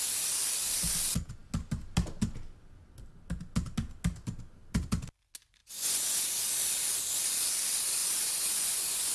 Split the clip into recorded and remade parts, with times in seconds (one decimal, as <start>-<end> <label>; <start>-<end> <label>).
0.0-5.6 recorded; 5.6-6.4 remade; 6.4-8.0 recorded; 8.0-9.1 remade